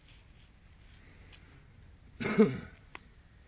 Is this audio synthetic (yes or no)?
no